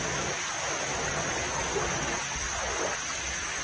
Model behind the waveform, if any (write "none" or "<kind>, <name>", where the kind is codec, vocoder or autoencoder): none